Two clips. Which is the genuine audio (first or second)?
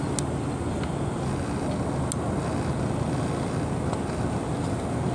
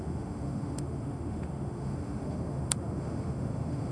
first